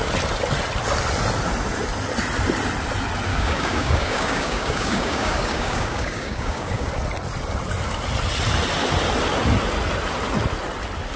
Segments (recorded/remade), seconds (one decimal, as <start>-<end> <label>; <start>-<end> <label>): 0.0-3.3 recorded; 3.3-6.9 remade; 6.9-11.2 recorded